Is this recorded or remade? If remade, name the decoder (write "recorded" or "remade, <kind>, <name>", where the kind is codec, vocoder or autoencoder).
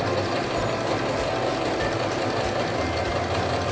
recorded